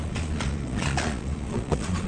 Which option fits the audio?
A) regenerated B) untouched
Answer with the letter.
A